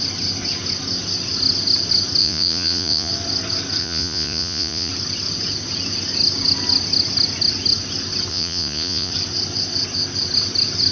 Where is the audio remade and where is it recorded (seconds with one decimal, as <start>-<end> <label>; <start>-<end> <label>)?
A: 0.0-2.2 recorded; 2.2-3.1 remade; 3.1-3.8 recorded; 3.8-4.9 remade; 4.9-8.3 recorded; 8.3-9.1 remade; 9.1-10.9 recorded